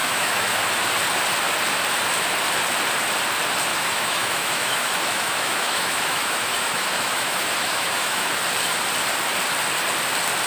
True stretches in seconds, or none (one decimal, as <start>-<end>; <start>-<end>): 0.6-3.7; 8.4-10.5